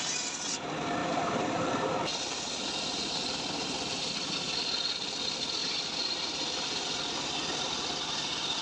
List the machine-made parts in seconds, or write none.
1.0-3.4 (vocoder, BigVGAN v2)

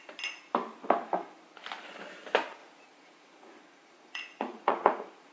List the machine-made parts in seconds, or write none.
2.6-5.3 (vocoder, Vocos)

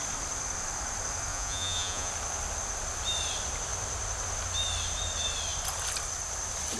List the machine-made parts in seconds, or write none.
1.3-2.1 (vocoder, Vocos)

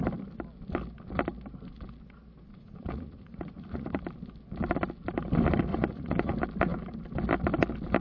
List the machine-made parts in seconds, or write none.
2.5-4.0 (vocoder, Vocos); 5.7-6.3